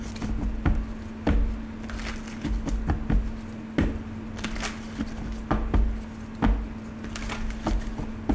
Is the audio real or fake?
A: real